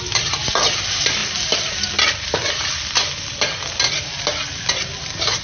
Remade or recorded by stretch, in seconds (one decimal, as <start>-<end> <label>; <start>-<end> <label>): 0.0-5.4 recorded